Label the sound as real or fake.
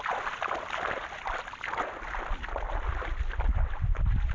real